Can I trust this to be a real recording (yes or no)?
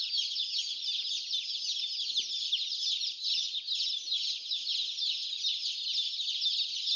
yes